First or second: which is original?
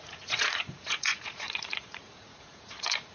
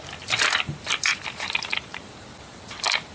second